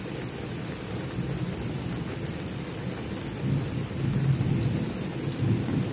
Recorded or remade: recorded